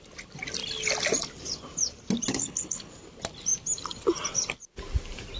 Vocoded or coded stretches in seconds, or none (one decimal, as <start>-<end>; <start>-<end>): 2.3-2.9